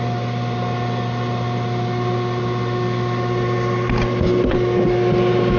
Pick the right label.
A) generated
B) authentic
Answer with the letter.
B